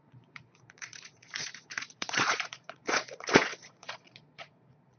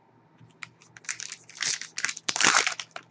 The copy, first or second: first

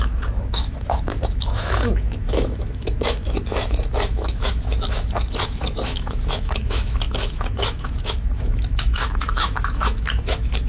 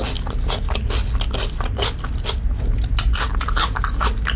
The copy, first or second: first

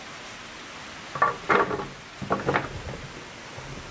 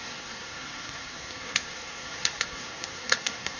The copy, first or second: second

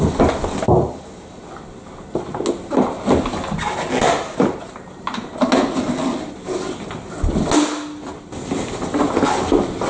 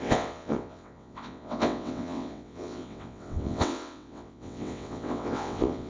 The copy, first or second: second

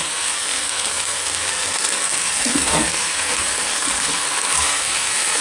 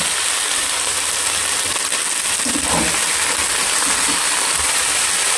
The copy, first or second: first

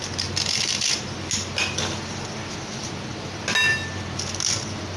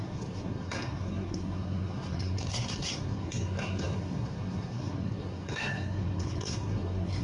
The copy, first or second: second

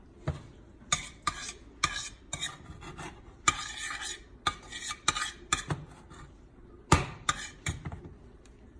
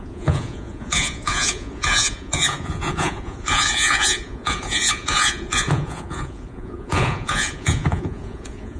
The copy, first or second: second